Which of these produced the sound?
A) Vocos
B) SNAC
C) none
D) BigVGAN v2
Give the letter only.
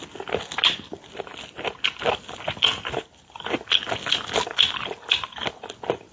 C